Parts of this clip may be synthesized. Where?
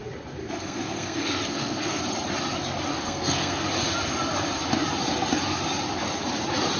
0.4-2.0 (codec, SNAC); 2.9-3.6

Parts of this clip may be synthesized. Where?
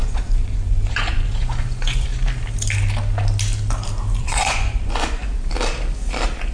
0.0-2.1 (vocoder, Vocos); 4.2-5.2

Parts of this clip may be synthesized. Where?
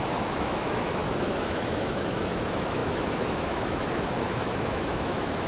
0.0-5.5 (autoencoder, DAC-VAE)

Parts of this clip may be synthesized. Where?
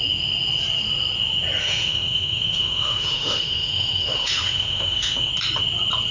1.6-5.3 (autoencoder, DAC-VAE)